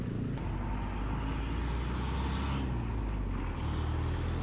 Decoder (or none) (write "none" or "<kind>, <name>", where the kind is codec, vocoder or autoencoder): none